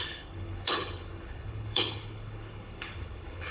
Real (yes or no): no